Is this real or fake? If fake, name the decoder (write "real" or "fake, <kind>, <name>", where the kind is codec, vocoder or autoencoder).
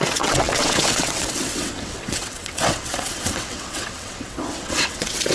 fake, vocoder, WaveNeXt